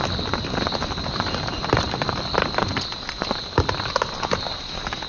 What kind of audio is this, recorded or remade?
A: recorded